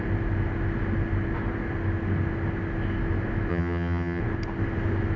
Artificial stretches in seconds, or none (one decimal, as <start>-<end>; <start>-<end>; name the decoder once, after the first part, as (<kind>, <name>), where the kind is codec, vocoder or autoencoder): 3.5-4.2 (vocoder, HiFi-GAN)